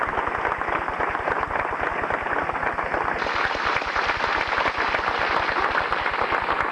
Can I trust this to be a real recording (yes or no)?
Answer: yes